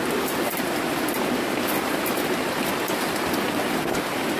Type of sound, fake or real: real